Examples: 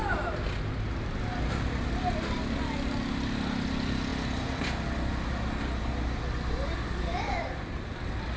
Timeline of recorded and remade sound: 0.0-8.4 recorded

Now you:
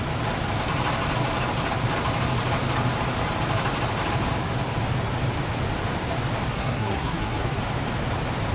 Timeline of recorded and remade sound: 0.0-6.5 recorded; 6.5-7.6 remade; 7.6-8.5 recorded